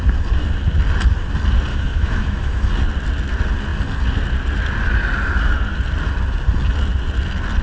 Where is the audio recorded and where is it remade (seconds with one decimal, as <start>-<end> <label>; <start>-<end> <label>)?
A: 0.0-1.7 recorded; 1.7-2.7 remade; 2.7-7.6 recorded